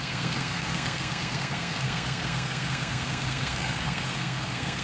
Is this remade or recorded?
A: remade